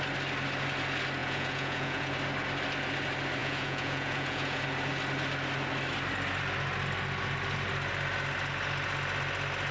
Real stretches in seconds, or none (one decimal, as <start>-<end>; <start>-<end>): 0.0-1.2; 2.1-3.4; 4.6-9.7